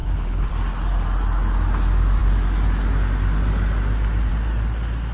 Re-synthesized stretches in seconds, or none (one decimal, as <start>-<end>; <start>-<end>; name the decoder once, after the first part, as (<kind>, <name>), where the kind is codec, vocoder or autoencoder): 0.0-0.5 (codec, HILCodec)